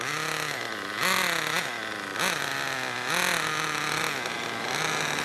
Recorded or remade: recorded